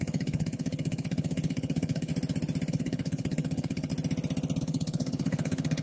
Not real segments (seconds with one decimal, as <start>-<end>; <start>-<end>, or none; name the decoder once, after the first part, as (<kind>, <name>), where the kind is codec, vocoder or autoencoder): 0.0-2.1 (codec, HILCodec); 2.7-3.9; 4.6-5.8